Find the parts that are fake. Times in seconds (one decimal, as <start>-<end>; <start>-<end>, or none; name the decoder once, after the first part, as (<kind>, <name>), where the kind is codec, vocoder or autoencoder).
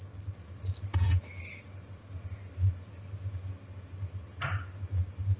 none